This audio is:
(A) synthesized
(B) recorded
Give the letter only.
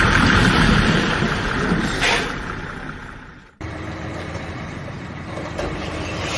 A